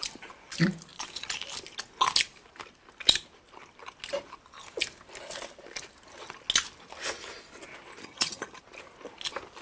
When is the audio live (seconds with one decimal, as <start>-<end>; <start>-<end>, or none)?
0.0-8.0; 8.6-9.6